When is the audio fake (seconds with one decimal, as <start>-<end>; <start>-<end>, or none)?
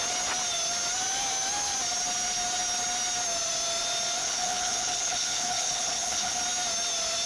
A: 4.2-6.4